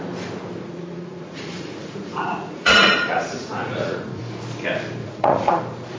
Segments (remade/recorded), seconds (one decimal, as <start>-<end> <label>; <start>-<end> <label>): 0.0-0.6 recorded; 0.6-4.2 remade; 4.2-5.0 recorded; 5.0-5.6 remade; 5.6-6.0 recorded